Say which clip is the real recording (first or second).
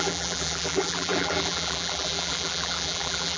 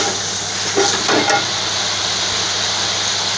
second